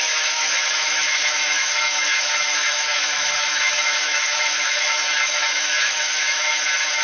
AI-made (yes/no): yes